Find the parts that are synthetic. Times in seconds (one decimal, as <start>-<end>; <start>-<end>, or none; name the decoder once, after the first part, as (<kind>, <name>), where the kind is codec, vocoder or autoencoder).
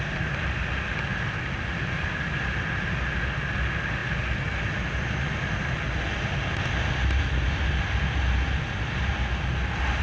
1.1-2.7 (vocoder, BigVGAN v2)